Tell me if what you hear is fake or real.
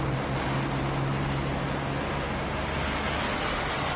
real